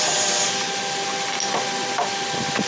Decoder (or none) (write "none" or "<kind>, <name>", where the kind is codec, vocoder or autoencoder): none